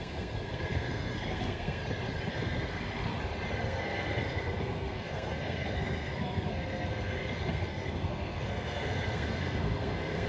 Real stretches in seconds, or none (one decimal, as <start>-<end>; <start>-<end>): 1.8-2.3; 3.1-3.6